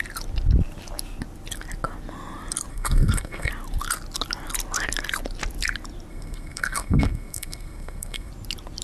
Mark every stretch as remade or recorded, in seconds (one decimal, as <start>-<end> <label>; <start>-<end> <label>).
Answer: 0.0-2.7 recorded; 2.7-3.5 remade; 3.5-6.1 recorded; 6.1-8.3 remade; 8.3-8.8 recorded